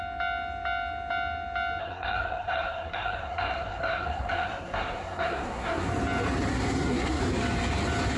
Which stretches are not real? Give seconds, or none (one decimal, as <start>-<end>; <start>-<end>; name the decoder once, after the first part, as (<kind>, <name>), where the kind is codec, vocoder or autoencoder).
1.8-5.9 (codec, SNAC); 6.5-7.2